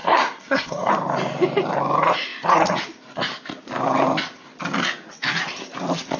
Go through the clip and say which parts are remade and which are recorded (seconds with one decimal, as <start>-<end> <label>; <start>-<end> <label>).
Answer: 0.0-0.9 remade; 0.9-6.2 recorded